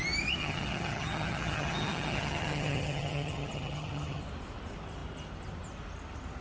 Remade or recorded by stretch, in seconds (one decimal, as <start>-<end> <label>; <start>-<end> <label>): 0.0-0.4 recorded; 0.4-4.2 remade; 4.2-6.4 recorded